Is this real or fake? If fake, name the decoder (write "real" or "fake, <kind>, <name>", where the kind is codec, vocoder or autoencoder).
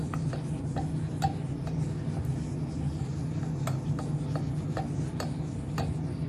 real